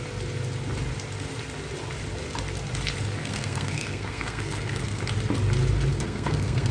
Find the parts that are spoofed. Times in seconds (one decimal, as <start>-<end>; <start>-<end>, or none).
3.2-5.0; 5.9-6.7